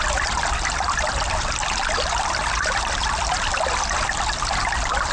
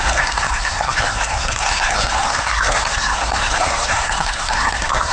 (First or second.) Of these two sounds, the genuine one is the first